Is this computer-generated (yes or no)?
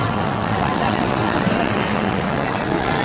yes